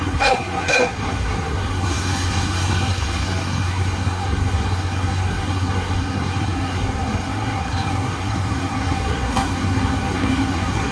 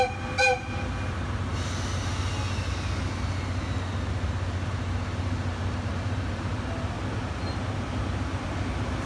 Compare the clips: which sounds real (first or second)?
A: second